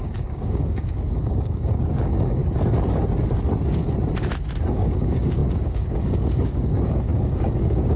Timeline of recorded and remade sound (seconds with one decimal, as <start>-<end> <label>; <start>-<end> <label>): 0.0-2.4 remade; 2.4-4.7 recorded; 4.7-8.0 remade